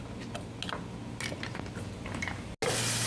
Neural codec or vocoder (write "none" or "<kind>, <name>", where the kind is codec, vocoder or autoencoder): none